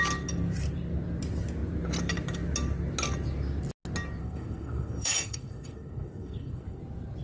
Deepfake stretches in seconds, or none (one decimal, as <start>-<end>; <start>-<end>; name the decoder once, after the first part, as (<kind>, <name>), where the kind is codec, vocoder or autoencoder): 4.2-6.8 (codec, SNAC)